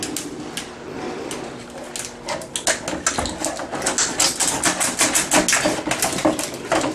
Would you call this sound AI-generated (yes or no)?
no